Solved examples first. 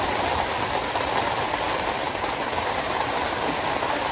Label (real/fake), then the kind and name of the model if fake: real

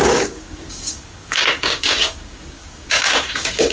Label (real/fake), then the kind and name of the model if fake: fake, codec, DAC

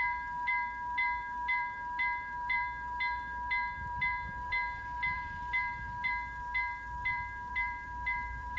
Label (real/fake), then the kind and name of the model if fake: fake, vocoder, BigVGAN v2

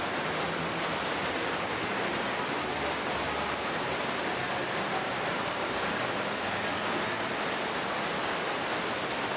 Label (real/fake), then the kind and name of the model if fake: real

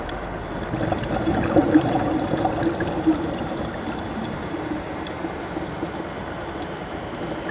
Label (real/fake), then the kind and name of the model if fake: fake, vocoder, BigVGAN v2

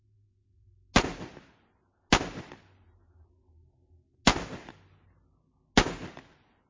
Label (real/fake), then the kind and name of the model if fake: real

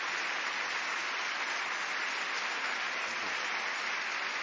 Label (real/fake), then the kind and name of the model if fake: real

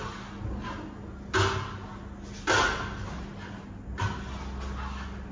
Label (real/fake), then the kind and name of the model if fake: real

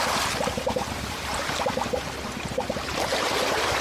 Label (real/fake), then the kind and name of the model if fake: real